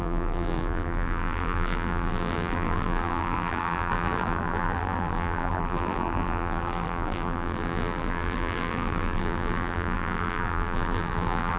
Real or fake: fake